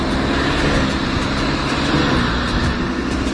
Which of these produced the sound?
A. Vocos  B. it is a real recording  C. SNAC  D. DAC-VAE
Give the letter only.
B